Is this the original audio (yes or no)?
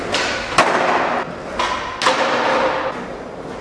yes